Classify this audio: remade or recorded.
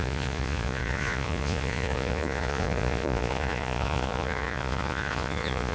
remade